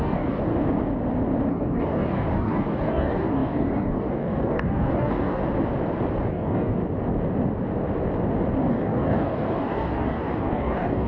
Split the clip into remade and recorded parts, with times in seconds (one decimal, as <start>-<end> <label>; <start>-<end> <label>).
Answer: 0.0-0.5 remade; 0.5-1.5 recorded; 1.5-5.4 remade; 5.4-6.3 recorded; 6.3-6.8 remade; 6.8-8.7 recorded; 8.7-11.1 remade